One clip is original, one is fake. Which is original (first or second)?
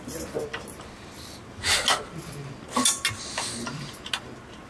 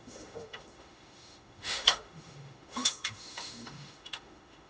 first